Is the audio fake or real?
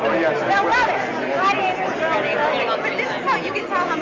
real